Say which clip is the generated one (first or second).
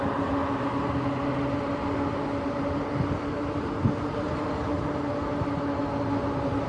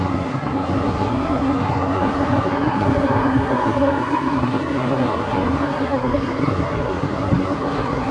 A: second